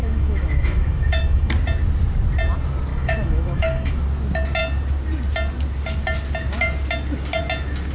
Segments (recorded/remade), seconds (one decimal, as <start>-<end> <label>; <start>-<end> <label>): 0.0-1.5 remade; 1.5-2.9 recorded; 2.9-3.9 remade; 3.9-7.9 recorded